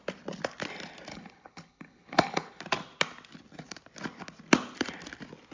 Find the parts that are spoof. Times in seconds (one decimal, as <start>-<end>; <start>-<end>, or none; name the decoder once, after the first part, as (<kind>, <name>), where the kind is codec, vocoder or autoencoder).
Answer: 1.1-2.6 (codec, HILCodec)